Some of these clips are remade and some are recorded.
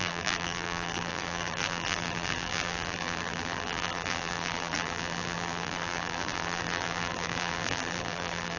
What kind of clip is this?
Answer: remade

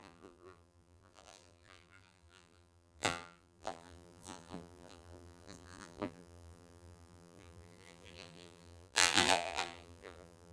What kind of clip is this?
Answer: remade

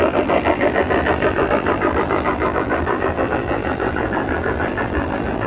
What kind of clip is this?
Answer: remade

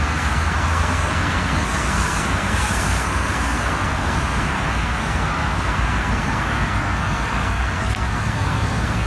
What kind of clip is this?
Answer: remade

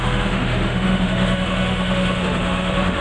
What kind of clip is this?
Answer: remade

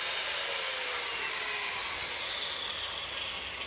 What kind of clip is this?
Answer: recorded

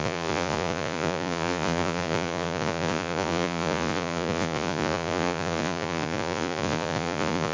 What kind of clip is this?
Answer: remade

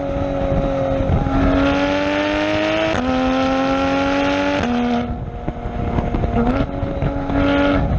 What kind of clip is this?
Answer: recorded